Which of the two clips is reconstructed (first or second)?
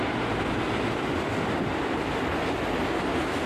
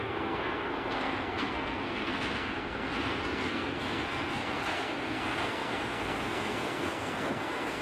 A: second